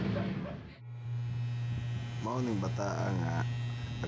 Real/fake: real